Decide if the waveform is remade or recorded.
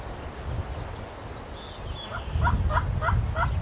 recorded